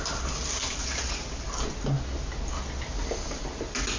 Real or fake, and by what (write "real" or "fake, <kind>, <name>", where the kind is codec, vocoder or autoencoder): real